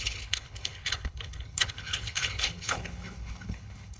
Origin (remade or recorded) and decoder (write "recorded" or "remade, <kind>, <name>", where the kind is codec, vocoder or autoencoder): remade, codec, HILCodec